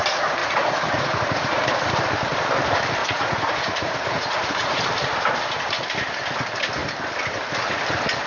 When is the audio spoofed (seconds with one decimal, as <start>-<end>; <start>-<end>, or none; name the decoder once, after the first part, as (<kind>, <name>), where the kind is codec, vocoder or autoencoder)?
0.4-1.6 (vocoder, Vocos); 3.0-4.8